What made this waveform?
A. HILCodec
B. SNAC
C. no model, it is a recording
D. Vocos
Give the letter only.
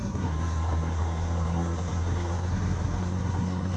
B